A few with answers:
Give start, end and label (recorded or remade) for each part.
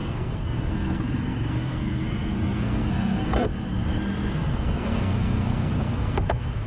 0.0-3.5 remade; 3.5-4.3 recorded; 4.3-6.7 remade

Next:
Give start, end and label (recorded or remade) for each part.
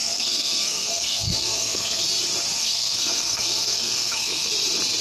0.0-2.0 remade; 2.0-2.6 recorded; 2.6-4.5 remade; 4.5-5.0 recorded